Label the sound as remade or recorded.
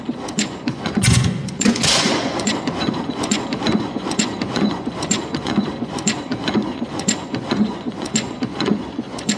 remade